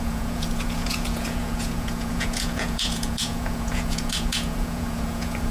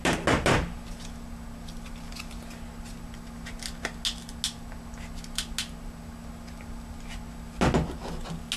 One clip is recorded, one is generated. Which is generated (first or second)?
first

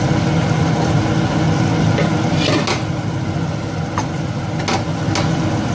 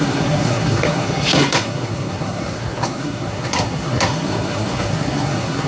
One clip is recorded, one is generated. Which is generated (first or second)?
second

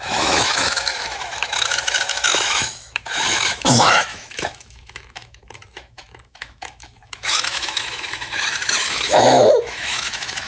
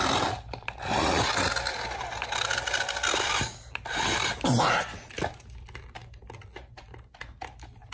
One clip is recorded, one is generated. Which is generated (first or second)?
first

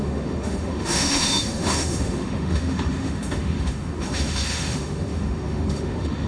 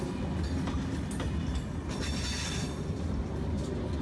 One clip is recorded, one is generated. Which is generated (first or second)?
first